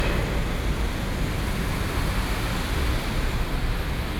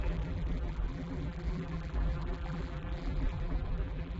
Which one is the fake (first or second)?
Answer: second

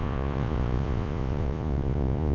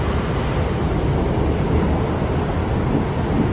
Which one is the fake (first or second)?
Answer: first